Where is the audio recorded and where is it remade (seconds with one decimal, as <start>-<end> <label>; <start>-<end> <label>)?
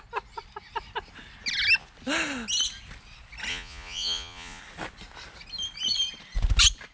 0.0-3.5 recorded; 3.5-4.6 remade; 4.6-6.9 recorded